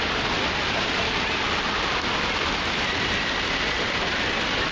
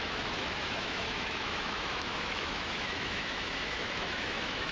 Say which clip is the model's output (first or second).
second